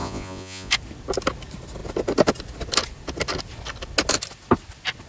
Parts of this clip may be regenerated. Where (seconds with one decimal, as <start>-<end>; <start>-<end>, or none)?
0.0-0.7